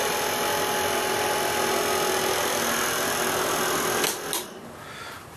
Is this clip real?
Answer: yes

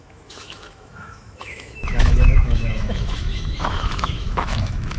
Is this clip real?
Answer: no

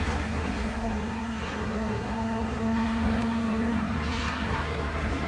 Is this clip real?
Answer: no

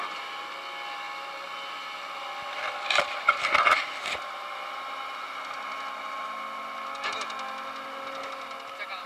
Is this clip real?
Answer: yes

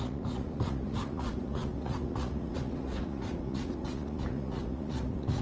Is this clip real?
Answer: no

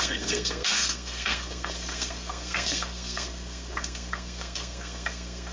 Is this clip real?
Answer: no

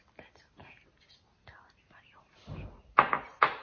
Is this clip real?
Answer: yes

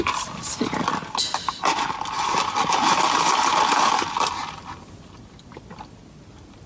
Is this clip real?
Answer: yes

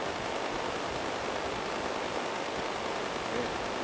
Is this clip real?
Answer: yes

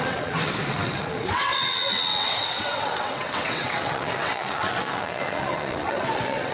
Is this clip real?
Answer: no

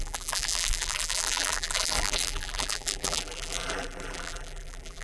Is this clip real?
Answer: no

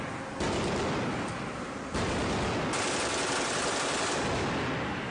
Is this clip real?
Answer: yes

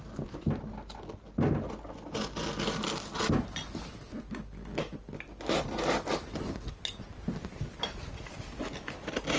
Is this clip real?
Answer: yes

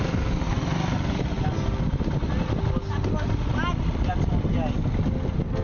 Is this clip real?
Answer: yes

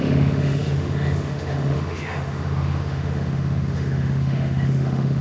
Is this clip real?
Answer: no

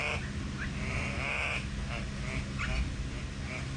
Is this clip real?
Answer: yes